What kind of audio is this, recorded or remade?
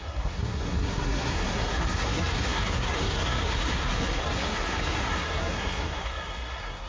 remade